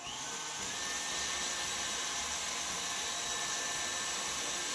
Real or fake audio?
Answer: real